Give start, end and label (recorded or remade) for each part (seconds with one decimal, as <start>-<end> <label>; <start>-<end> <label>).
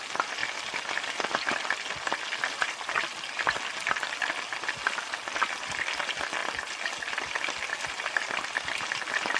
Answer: 0.0-9.4 recorded